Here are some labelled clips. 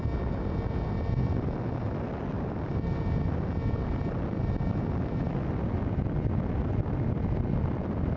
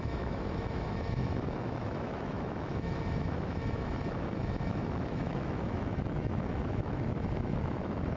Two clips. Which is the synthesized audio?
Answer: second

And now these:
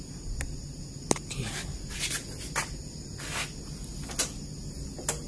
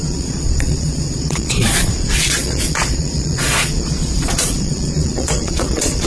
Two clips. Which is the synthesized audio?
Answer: second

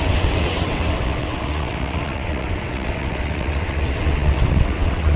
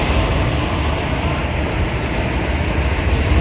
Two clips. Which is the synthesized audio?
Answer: first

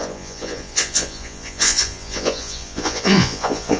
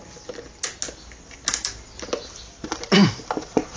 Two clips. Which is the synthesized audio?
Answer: first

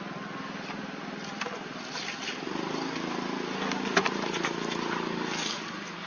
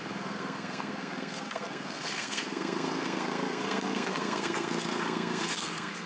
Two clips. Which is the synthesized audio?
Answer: second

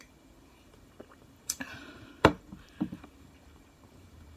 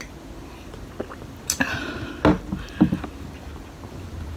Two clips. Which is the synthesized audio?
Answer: first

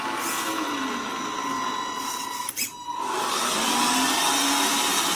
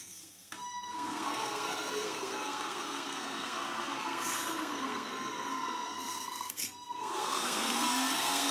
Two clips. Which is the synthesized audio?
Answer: second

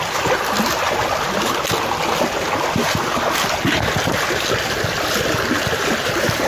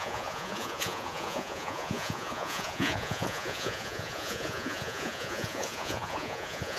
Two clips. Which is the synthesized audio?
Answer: second